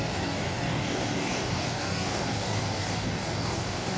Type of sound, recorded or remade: remade